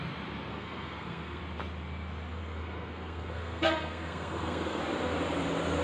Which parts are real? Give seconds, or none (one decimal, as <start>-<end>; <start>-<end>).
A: 0.0-0.5; 1.4-2.4; 4.8-5.8